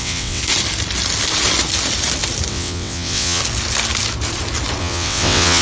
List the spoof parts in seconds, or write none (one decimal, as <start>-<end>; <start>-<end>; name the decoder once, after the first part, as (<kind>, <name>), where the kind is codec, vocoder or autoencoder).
0.0-0.4 (vocoder, WaveNeXt); 2.5-3.4; 4.8-5.6